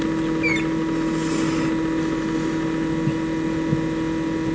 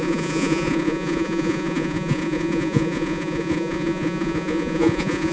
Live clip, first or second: first